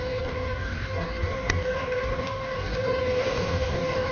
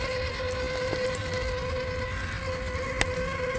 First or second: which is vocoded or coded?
first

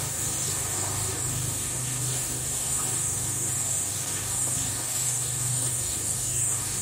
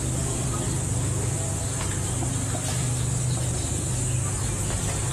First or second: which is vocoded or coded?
first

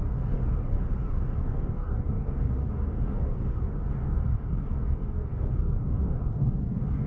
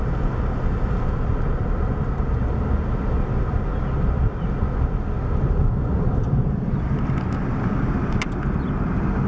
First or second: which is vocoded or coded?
first